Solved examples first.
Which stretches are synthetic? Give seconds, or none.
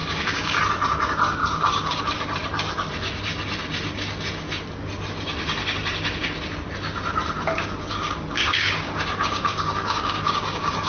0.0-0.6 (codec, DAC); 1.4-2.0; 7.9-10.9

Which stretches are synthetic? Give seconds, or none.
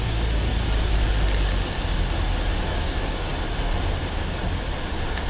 0.0-0.5 (codec, DAC); 2.5-3.3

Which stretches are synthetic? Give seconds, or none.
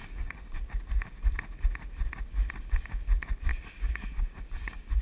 0.0-0.6 (codec, DAC); 3.5-5.0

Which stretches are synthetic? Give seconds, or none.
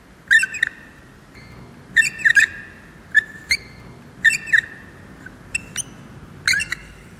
6.6-7.2 (codec, DAC)